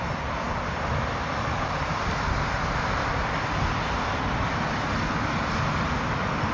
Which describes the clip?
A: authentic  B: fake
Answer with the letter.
A